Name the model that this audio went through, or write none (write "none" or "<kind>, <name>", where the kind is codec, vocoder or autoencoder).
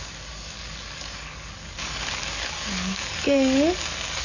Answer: codec, DAC